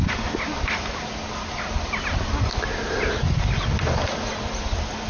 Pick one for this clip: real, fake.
real